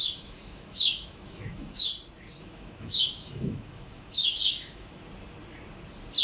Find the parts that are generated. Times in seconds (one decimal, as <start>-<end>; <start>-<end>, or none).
0.0-1.9; 2.4-5.0